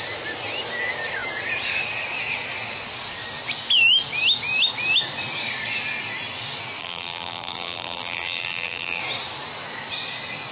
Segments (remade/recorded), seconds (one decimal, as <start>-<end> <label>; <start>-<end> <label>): 0.0-6.8 recorded; 6.8-9.0 remade; 9.0-10.5 recorded